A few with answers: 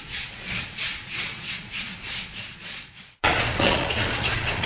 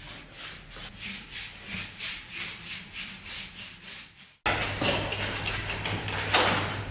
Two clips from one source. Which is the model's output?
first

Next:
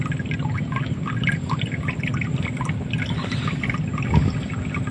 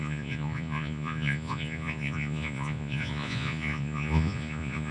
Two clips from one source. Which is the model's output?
second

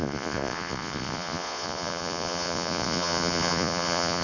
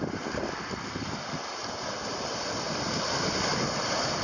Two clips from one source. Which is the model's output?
first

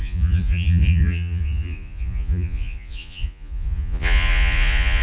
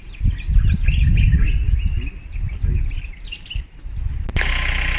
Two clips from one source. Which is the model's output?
first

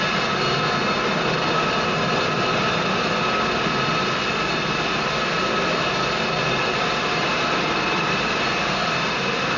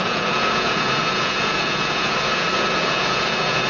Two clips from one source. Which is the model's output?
second